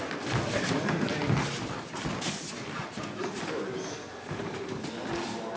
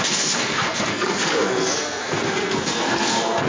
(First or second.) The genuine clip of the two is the first